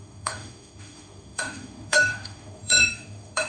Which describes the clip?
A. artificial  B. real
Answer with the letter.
A